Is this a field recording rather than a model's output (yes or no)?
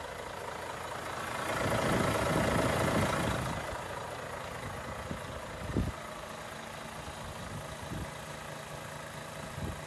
yes